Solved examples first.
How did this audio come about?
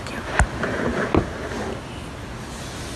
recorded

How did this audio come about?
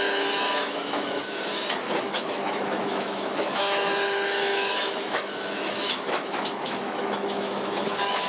remade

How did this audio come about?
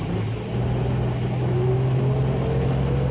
recorded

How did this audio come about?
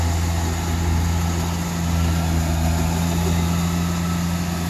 recorded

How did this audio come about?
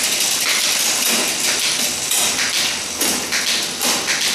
recorded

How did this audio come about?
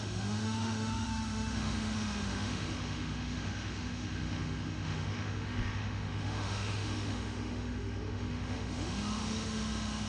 remade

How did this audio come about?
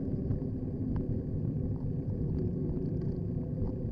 recorded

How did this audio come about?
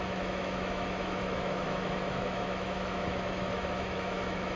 remade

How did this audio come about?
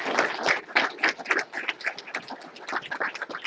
recorded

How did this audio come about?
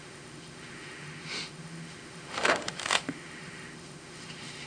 remade